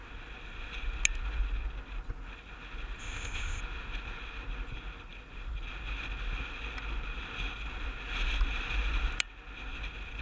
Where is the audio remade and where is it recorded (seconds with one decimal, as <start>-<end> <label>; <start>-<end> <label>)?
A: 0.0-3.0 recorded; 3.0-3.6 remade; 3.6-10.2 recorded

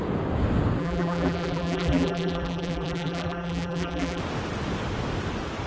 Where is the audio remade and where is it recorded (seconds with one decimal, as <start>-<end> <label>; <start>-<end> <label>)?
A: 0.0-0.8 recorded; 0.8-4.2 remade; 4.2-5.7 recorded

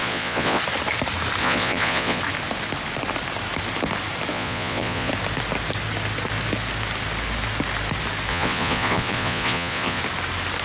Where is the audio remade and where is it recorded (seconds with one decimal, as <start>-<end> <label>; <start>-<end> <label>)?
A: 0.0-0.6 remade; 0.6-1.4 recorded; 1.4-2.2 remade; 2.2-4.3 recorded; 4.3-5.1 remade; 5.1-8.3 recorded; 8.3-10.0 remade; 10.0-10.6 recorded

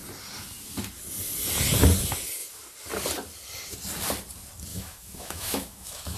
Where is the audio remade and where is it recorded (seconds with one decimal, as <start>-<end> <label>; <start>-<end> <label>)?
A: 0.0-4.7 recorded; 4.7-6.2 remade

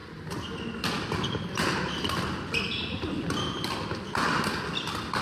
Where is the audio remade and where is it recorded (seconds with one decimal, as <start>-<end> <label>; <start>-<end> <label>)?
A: 0.0-5.2 recorded

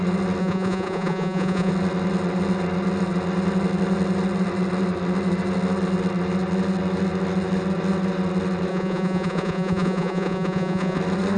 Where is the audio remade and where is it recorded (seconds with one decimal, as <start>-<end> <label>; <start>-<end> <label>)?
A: 0.0-0.4 recorded; 0.4-1.7 remade; 1.7-8.7 recorded; 8.7-11.0 remade; 11.0-11.4 recorded